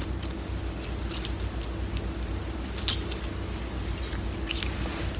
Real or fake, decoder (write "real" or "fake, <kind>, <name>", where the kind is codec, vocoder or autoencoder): real